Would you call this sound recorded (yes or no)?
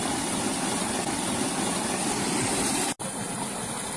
yes